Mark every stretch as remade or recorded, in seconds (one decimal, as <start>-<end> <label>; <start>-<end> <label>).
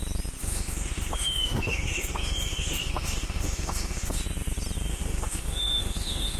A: 0.0-0.4 recorded; 0.4-4.2 remade; 4.2-4.9 recorded; 4.9-6.4 remade